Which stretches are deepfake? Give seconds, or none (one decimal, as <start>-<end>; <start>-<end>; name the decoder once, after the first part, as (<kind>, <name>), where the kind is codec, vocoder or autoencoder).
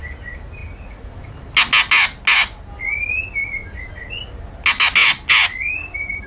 none